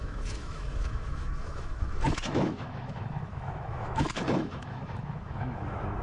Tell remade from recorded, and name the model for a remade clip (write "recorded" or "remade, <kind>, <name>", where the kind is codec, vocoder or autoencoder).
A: remade, autoencoder, DAC-VAE